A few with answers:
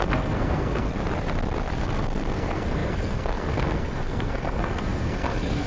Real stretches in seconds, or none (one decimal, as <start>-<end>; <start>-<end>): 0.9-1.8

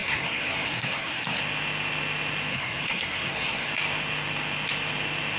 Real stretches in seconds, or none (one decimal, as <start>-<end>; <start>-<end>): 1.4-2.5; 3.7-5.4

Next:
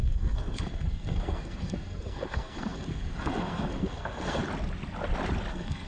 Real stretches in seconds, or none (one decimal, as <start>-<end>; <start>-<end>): 4.4-5.5

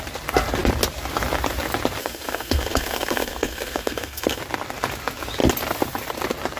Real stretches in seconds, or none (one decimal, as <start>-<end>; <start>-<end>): 0.0-2.0; 4.4-6.6

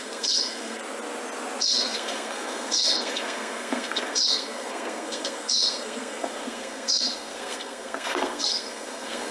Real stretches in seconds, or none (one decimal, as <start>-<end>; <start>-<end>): 0.8-1.6

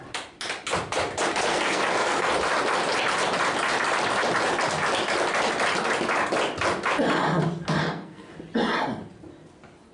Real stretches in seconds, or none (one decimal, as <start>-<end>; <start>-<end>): 0.0-1.5; 2.3-7.8; 8.3-9.9